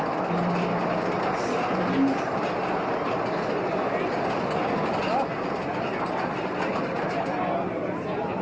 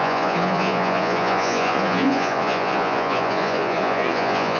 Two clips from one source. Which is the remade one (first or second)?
second